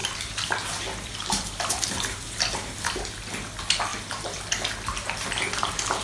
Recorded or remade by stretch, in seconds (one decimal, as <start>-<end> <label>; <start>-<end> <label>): 0.0-3.1 remade; 3.1-3.9 recorded; 3.9-4.4 remade; 4.4-6.0 recorded